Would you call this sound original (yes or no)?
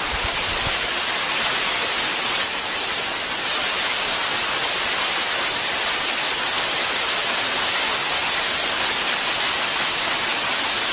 yes